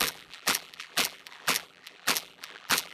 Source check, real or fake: fake